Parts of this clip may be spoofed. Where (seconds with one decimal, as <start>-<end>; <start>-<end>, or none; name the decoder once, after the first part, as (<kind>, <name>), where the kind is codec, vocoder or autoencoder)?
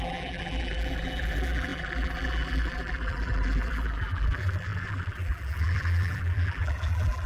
0.0-7.3 (vocoder, BigVGAN v2)